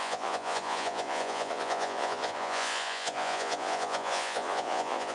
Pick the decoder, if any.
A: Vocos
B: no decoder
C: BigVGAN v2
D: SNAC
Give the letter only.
A